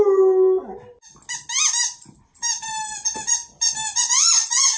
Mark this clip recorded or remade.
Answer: recorded